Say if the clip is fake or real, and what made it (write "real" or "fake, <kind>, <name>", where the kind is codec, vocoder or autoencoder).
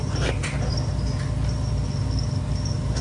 real